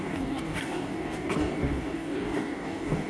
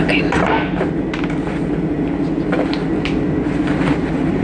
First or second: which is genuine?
second